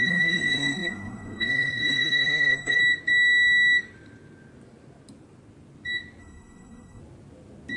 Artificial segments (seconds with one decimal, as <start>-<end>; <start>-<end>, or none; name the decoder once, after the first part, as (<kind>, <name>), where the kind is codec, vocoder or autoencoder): 0.0-2.8 (codec, SNAC); 6.2-7.0